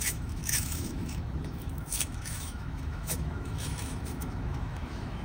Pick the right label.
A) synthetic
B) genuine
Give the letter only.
A